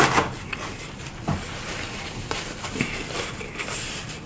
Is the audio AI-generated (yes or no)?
no